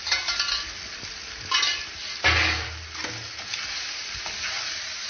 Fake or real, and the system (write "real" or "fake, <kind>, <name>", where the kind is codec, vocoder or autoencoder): real